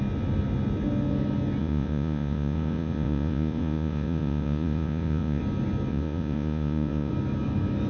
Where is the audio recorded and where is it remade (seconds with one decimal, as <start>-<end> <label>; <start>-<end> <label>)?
0.0-1.6 recorded; 1.6-5.4 remade; 5.4-5.9 recorded; 5.9-7.1 remade; 7.1-7.9 recorded